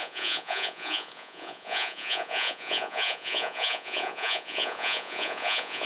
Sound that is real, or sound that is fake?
fake